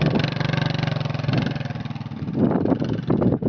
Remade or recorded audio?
recorded